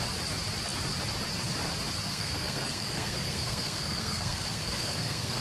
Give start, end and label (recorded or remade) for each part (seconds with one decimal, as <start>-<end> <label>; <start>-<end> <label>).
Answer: 0.0-2.1 recorded; 2.1-5.4 remade